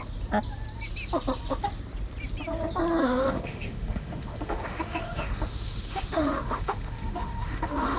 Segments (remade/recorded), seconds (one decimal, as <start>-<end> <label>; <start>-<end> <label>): 0.0-3.0 recorded; 3.0-8.0 remade